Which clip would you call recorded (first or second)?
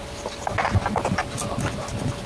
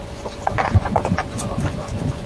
first